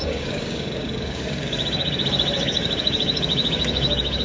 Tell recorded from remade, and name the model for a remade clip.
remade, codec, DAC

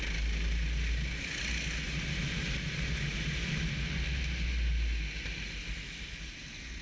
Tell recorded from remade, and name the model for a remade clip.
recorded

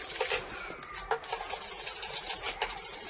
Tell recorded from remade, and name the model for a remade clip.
recorded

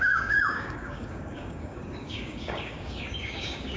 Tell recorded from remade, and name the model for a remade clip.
remade, codec, DAC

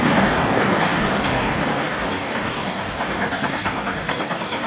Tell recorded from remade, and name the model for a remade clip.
remade, codec, DAC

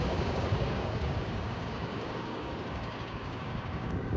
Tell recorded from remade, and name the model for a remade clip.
remade, codec, DAC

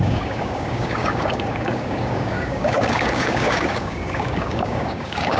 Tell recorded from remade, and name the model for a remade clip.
remade, codec, DAC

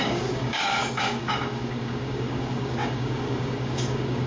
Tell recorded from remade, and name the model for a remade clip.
remade, codec, DAC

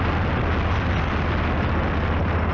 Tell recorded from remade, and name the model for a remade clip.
recorded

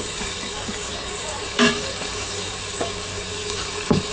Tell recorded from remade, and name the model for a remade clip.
remade, codec, DAC